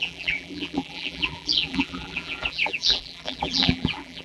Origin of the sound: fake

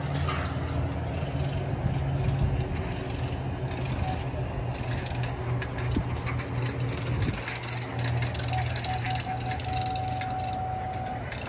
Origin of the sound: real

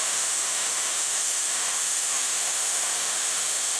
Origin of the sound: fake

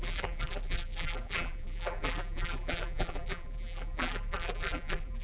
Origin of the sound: fake